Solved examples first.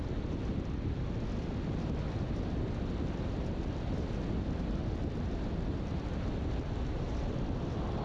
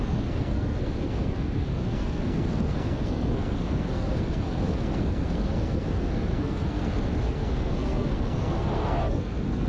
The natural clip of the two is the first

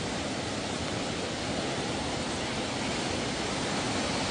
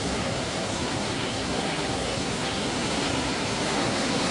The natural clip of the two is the first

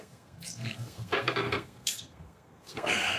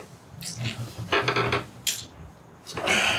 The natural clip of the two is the second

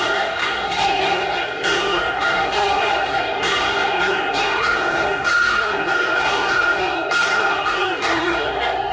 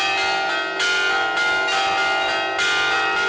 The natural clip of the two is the second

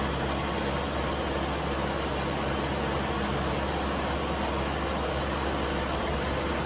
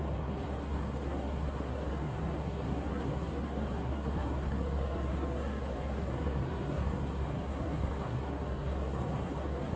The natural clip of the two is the first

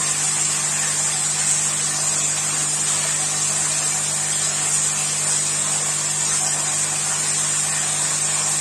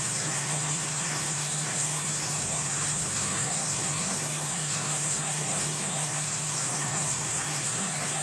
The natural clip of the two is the first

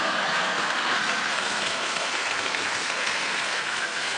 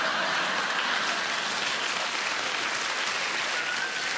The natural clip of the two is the second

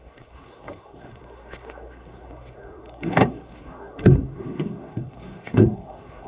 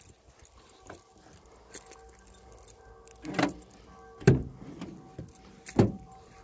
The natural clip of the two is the second